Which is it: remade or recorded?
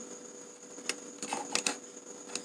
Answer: recorded